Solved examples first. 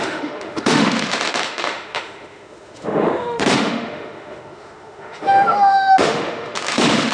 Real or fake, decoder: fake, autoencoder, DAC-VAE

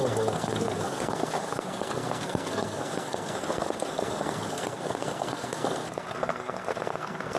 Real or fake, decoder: fake, codec, SNAC